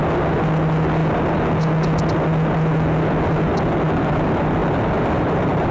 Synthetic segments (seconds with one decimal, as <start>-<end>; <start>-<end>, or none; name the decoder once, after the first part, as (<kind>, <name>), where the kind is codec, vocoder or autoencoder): none